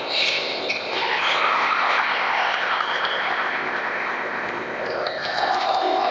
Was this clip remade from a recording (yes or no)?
yes